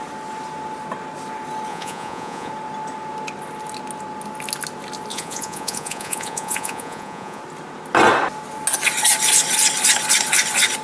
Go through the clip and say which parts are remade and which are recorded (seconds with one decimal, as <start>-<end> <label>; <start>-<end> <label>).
0.0-1.7 recorded; 1.7-2.5 remade; 2.5-5.1 recorded; 5.1-7.4 remade; 7.4-10.8 recorded